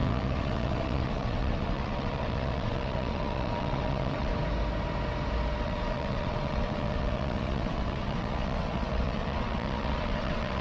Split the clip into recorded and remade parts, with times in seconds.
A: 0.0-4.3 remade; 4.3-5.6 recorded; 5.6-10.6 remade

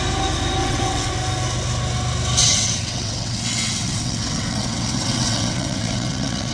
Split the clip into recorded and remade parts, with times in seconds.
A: 0.0-0.6 recorded; 0.6-1.1 remade; 1.1-2.4 recorded; 2.4-6.5 remade

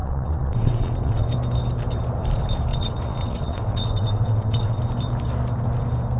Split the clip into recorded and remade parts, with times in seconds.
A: 0.0-1.3 remade; 1.3-2.7 recorded; 2.7-4.8 remade; 4.8-6.2 recorded